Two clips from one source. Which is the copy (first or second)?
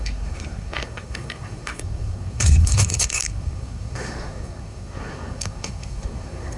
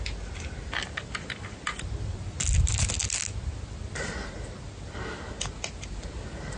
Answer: first